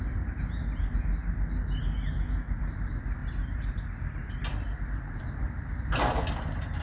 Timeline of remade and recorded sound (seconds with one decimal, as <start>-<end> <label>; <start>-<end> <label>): 0.0-1.2 remade; 1.2-2.7 recorded; 2.7-3.2 remade; 3.2-5.2 recorded; 5.2-6.8 remade